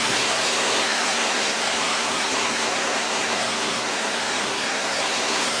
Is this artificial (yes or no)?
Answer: yes